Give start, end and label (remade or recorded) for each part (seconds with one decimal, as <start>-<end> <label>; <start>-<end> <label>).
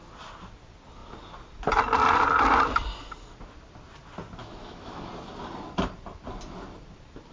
0.0-4.4 recorded; 4.4-5.1 remade; 5.1-7.3 recorded